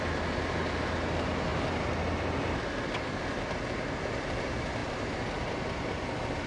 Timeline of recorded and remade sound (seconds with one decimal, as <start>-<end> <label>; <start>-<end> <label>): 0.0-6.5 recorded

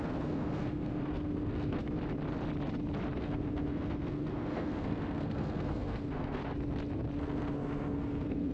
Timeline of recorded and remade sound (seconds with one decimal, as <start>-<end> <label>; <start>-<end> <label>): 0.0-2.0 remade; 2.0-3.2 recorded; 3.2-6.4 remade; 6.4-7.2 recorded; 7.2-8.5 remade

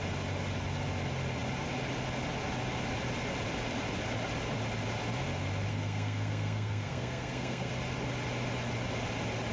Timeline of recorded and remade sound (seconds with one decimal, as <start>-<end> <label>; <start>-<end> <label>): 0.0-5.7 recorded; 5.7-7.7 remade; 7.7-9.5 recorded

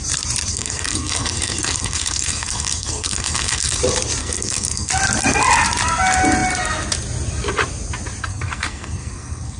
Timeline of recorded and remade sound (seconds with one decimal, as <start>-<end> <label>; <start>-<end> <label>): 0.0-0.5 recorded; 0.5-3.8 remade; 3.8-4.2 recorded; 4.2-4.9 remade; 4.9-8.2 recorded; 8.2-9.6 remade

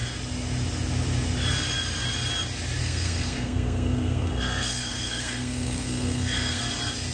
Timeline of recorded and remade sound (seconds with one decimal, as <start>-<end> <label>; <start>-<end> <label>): 0.0-2.8 recorded; 2.8-6.6 remade; 6.6-7.1 recorded